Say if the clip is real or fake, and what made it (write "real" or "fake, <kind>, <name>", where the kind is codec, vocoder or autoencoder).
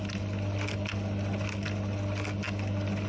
real